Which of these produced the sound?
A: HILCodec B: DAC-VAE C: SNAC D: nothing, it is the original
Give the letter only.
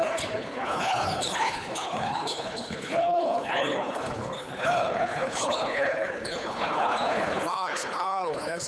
A